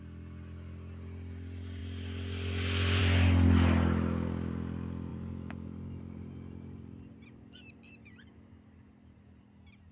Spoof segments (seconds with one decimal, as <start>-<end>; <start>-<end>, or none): 5.1-9.4